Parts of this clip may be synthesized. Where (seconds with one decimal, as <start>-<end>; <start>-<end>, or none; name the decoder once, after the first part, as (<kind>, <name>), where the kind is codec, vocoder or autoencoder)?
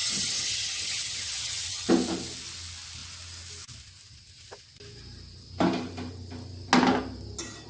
0.0-1.9 (vocoder, HiFi-GAN)